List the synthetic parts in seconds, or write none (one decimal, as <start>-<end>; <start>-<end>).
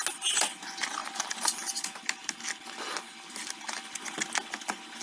1.0-3.9